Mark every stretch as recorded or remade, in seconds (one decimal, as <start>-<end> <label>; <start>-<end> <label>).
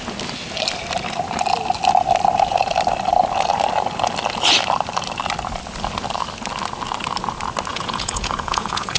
0.0-7.7 recorded; 7.7-9.0 remade